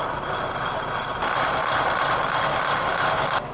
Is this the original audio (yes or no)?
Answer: yes